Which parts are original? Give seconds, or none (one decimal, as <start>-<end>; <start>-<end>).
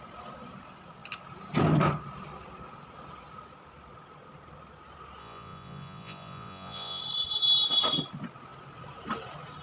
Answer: 0.0-5.2; 7.0-9.6